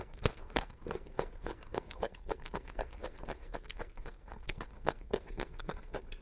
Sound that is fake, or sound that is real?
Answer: fake